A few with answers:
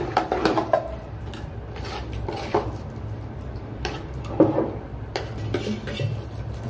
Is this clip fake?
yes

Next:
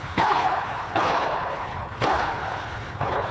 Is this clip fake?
yes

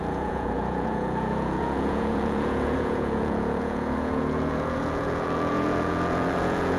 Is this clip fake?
yes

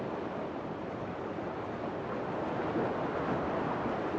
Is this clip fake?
no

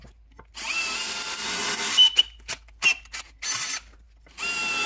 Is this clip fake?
no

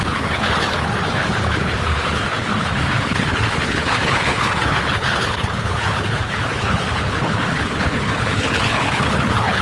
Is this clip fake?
yes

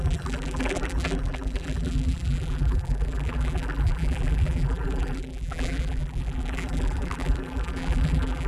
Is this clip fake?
yes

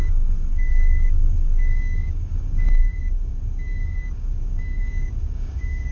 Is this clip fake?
yes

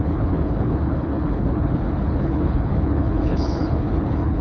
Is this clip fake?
yes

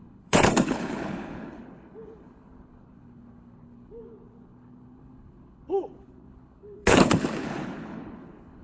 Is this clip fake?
yes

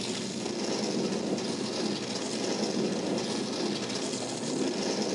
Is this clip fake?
no